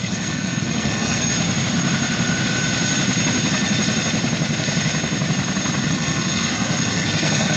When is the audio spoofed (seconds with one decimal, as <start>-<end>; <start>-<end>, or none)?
0.0-1.3; 5.9-7.6